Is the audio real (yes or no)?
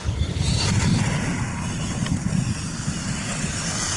yes